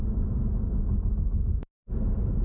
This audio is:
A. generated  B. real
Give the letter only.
B